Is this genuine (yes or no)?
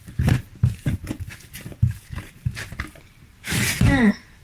no